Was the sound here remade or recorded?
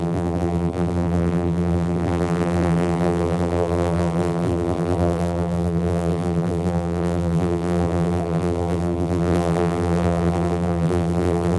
remade